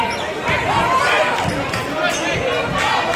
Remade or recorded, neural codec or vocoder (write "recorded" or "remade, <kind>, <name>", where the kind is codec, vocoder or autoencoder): recorded